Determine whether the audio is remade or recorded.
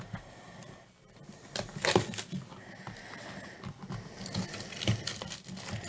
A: recorded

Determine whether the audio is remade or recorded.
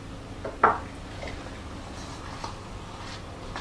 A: recorded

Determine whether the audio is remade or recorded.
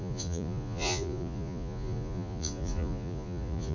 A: remade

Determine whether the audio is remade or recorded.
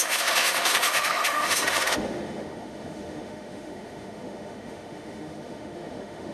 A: remade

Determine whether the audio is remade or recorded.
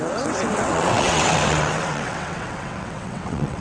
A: remade